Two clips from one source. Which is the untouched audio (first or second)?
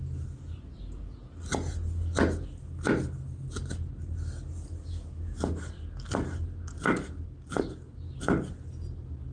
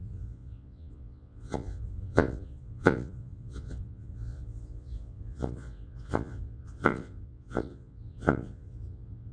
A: first